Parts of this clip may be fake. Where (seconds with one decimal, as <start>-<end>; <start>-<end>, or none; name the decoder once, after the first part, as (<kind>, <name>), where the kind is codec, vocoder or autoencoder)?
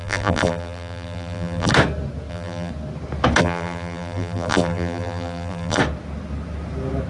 0.0-1.7 (vocoder, BigVGAN v2); 2.3-2.7; 3.4-5.8